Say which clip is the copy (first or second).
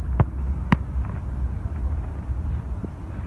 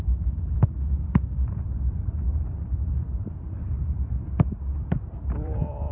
second